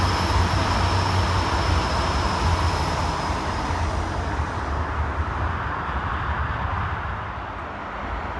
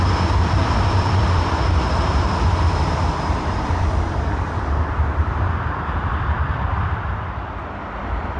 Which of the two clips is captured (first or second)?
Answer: first